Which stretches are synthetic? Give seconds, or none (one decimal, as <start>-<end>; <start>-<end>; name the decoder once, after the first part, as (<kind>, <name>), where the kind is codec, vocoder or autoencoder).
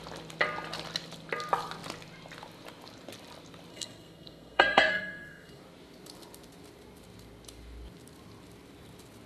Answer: 3.7-5.6 (codec, SNAC)